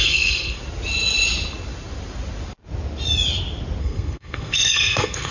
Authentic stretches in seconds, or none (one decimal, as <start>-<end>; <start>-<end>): 0.6-3.8